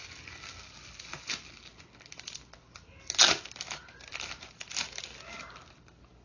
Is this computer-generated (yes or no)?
no